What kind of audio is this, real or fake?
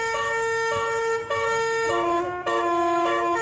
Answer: fake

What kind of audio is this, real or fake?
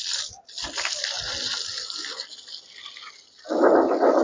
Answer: real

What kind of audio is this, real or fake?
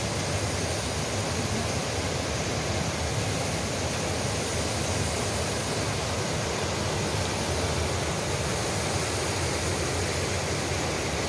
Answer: real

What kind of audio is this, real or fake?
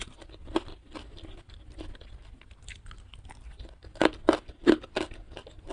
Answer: real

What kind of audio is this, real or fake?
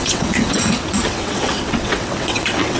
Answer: fake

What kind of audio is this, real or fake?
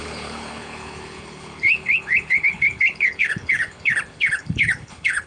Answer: fake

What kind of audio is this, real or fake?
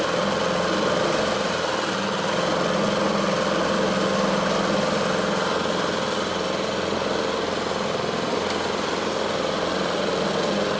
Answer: real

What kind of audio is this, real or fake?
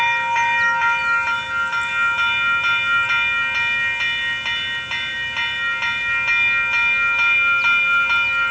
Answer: real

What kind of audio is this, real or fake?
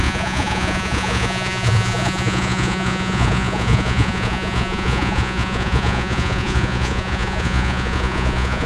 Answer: fake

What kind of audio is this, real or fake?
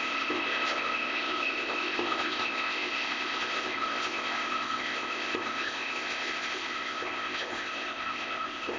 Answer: fake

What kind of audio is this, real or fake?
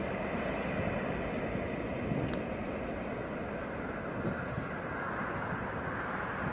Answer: real